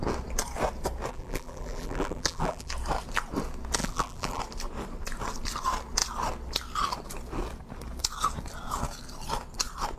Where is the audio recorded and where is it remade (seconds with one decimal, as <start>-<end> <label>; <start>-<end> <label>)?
0.0-1.1 recorded; 1.1-2.7 remade; 2.7-3.8 recorded; 3.8-4.4 remade; 4.4-10.0 recorded